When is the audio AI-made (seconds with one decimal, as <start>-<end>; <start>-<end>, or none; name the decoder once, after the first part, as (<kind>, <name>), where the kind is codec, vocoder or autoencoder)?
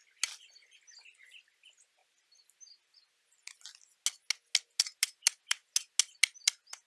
none